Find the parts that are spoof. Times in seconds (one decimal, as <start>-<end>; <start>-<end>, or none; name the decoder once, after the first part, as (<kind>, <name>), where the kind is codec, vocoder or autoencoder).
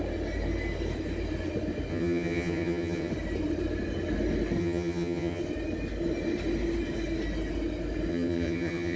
1.9-3.1 (vocoder, HiFi-GAN); 4.6-5.4; 8.1-9.0